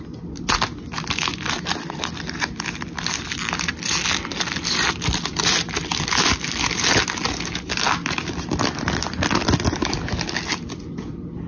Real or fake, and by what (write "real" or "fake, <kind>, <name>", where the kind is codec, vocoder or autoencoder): real